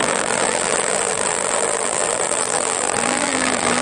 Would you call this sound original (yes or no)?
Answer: no